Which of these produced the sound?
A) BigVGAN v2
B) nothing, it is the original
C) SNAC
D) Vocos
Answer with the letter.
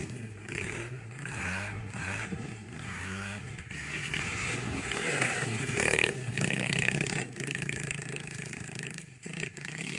C